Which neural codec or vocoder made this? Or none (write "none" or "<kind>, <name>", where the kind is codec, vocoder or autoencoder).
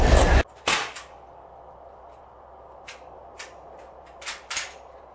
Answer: none